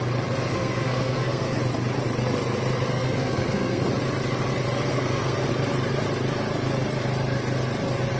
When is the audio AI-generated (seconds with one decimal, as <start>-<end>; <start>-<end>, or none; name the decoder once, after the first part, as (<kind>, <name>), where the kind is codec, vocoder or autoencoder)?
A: 0.5-1.6 (codec, SNAC); 2.9-3.8; 4.9-5.5